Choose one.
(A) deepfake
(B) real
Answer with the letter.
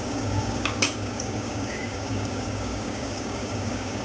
A